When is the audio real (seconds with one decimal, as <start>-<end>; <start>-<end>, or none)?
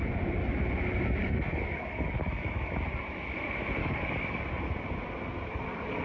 0.0-1.2; 2.7-3.8; 4.4-6.0